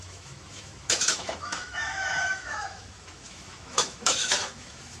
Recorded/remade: remade